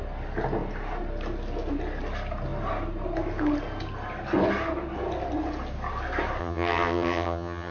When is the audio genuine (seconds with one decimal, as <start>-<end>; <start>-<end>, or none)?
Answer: 0.0-6.4